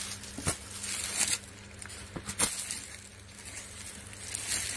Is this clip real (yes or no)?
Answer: yes